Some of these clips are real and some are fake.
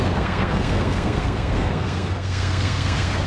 fake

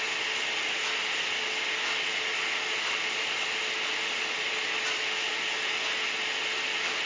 real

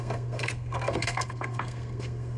fake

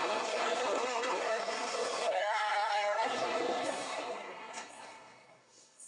fake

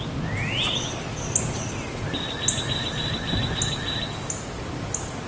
real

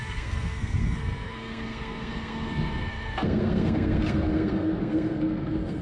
fake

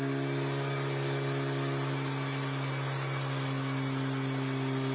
real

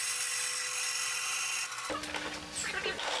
real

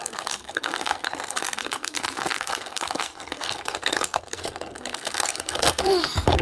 fake